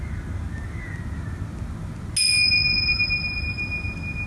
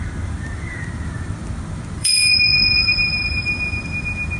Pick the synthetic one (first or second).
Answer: second